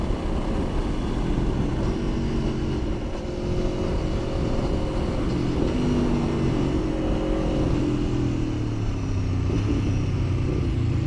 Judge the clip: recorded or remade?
recorded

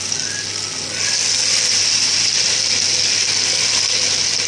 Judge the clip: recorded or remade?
recorded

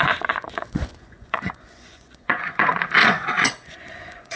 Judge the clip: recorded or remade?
remade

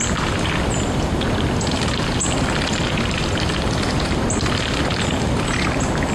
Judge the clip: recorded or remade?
recorded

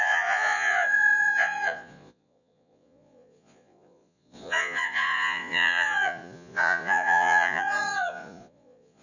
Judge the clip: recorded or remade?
remade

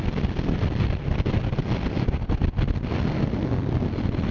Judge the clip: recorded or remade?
recorded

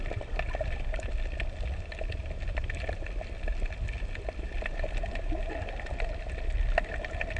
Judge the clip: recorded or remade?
recorded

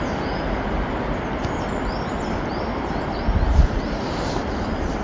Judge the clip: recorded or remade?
recorded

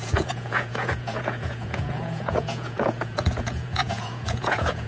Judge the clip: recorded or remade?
remade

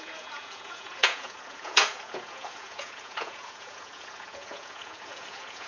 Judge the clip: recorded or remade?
remade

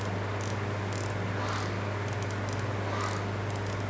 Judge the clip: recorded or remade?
recorded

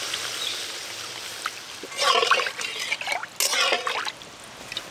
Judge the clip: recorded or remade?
recorded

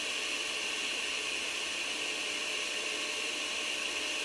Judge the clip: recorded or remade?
recorded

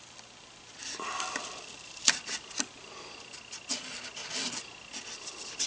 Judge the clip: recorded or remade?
recorded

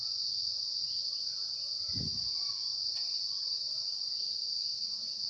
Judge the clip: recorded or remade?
remade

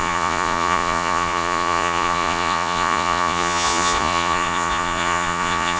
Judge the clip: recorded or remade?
remade